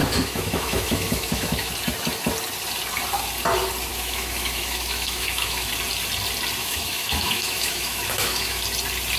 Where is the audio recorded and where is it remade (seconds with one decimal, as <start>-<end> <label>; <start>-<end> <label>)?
0.0-1.7 remade; 1.7-3.9 recorded; 3.9-5.7 remade; 5.7-6.6 recorded; 6.6-8.6 remade; 8.6-9.2 recorded